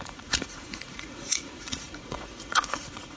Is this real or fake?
fake